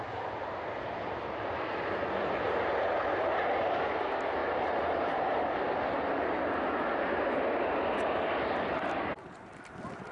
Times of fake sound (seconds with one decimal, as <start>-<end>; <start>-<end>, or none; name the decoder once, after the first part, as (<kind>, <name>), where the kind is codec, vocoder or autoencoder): none